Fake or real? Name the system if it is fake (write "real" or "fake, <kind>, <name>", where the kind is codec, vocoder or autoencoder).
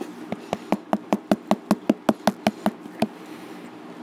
real